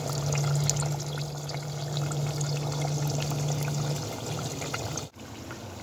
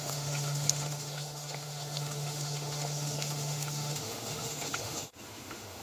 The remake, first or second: second